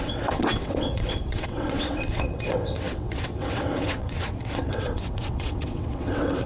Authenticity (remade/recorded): remade